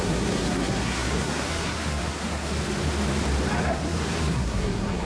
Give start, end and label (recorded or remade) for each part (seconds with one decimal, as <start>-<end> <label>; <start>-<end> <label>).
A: 0.0-2.5 remade; 2.5-3.6 recorded; 3.6-5.0 remade